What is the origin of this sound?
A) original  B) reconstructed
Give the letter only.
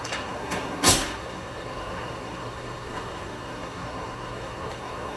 B